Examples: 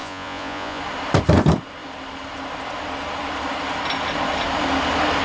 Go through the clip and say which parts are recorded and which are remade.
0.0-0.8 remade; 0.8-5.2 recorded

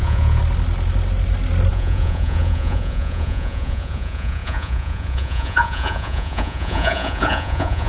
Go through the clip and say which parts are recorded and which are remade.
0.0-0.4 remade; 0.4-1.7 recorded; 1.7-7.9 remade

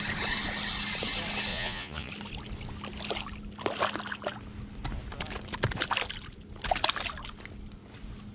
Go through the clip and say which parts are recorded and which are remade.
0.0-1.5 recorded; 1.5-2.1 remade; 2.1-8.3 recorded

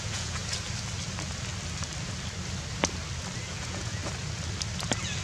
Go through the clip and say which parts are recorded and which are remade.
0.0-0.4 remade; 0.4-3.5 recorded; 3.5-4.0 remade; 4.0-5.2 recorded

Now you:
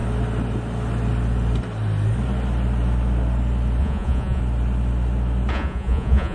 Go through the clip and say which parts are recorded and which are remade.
0.0-3.8 recorded; 3.8-4.4 remade; 4.4-5.5 recorded; 5.5-6.3 remade